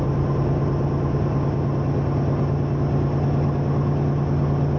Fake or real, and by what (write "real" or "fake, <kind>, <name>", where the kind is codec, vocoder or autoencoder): real